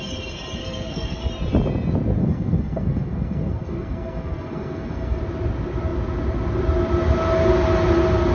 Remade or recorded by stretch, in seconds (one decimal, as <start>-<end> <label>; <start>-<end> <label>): 0.0-0.6 recorded; 0.6-1.3 remade; 1.3-2.2 recorded; 2.2-5.2 remade; 5.2-8.3 recorded